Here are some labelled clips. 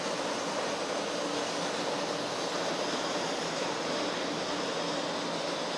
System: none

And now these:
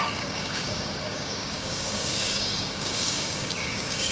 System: codec, DAC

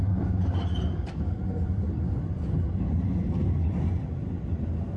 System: none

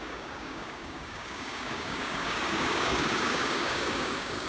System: codec, DAC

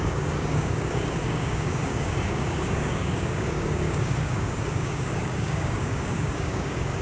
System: codec, DAC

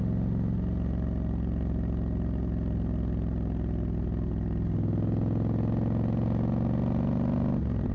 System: none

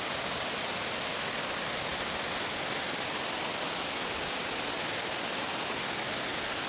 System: none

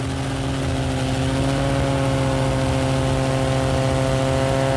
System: none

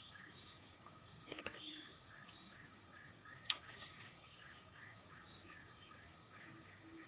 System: codec, DAC